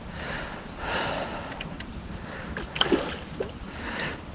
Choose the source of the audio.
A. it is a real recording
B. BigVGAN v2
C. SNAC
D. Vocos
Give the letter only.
A